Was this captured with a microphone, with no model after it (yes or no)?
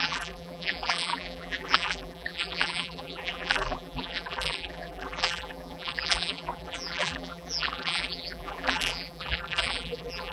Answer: no